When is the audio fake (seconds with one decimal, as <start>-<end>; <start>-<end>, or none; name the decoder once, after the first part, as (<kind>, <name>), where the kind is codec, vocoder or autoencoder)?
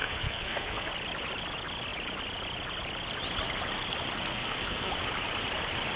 0.0-0.9 (codec, SNAC); 4.3-4.9